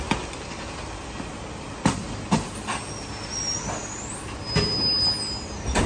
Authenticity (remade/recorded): recorded